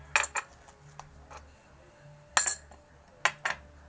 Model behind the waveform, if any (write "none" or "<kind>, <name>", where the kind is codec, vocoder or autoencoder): none